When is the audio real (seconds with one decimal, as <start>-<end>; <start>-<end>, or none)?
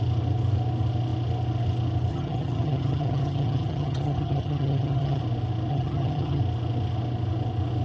0.0-2.1; 5.2-5.7; 6.4-7.8